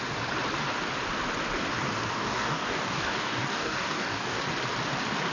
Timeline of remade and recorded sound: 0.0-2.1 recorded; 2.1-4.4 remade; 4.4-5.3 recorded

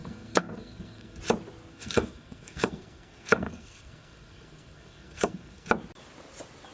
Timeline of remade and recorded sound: 0.0-1.2 remade; 1.2-1.7 recorded; 1.7-5.7 remade; 5.7-6.7 recorded

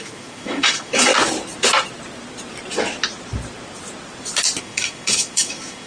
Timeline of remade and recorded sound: 0.0-1.1 remade; 1.1-4.6 recorded; 4.6-5.9 remade

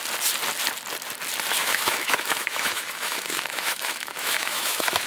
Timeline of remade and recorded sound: 0.0-1.6 recorded; 1.6-5.1 remade

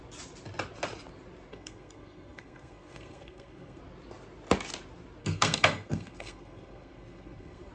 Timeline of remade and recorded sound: 0.0-1.5 recorded; 1.5-3.8 remade; 3.8-5.2 recorded; 5.2-7.7 remade